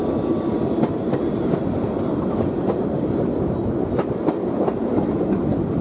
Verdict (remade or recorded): recorded